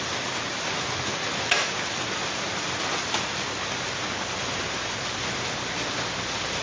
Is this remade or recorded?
recorded